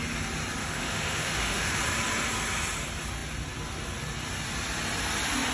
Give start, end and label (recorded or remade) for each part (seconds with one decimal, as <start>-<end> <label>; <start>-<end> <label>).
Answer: 0.0-0.6 recorded; 0.6-1.8 remade; 1.8-5.5 recorded